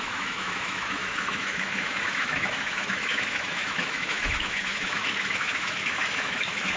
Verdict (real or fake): fake